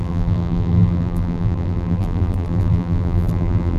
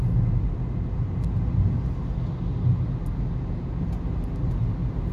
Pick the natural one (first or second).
second